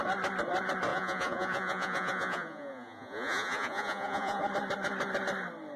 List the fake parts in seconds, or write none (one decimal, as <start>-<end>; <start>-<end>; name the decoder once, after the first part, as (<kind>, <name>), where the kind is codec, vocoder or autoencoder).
0.9-4.4 (vocoder, Vocos)